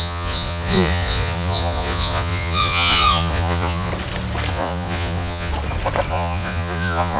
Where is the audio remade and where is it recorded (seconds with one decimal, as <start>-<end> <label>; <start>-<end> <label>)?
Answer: 0.0-3.9 remade; 3.9-4.5 recorded; 4.5-5.5 remade; 5.5-6.1 recorded; 6.1-7.2 remade